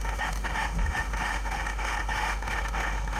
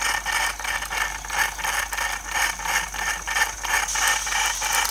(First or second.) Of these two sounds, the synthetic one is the first